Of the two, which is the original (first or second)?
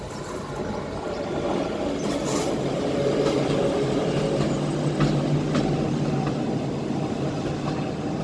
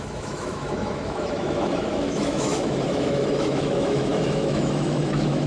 first